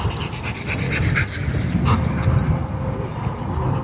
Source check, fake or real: real